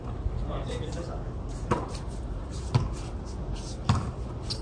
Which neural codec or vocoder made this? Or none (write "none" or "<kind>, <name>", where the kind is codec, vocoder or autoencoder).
none